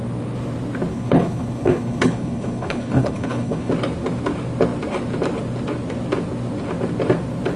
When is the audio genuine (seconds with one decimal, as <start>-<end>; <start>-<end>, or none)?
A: 0.0-0.9; 3.7-7.6